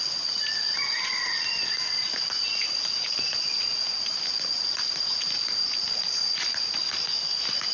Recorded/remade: recorded